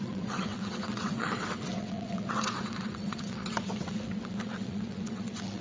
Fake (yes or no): yes